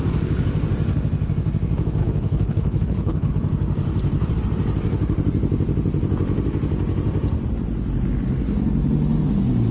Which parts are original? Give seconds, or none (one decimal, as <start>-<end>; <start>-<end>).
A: 0.0-2.0; 3.3-9.7